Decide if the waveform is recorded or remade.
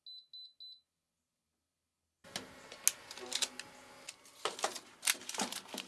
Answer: recorded